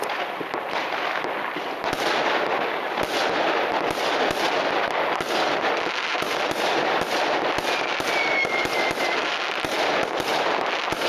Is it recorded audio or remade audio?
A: recorded